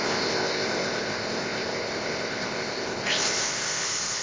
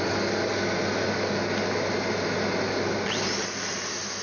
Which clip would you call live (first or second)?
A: second